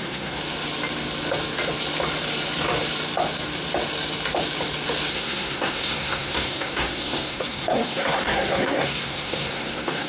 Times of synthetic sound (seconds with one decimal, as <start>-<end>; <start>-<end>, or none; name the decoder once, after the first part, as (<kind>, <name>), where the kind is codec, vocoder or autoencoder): 0.0-0.4 (codec, SNAC); 5.1-10.1